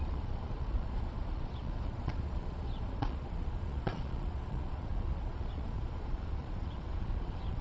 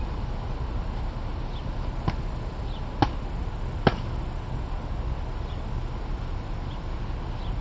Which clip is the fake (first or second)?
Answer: first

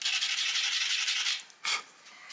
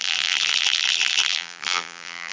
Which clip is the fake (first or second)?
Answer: second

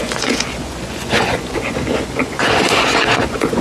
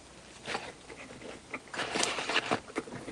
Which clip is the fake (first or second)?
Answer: first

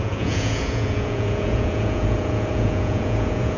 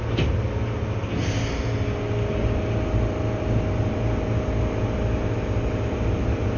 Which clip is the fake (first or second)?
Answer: first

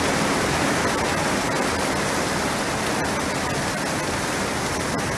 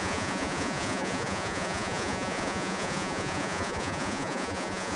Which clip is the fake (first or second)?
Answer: second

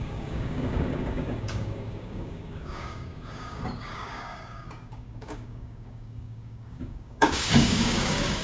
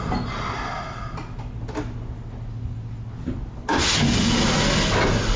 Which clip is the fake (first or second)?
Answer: first